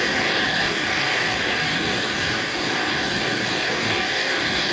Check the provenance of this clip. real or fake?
fake